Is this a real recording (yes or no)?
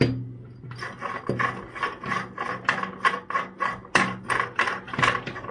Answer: yes